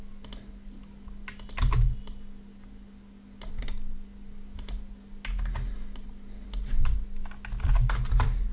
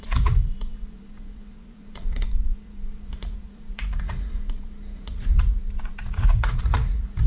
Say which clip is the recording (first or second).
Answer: first